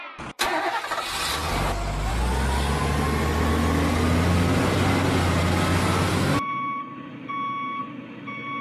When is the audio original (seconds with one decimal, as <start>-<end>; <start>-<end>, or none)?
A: 0.0-8.6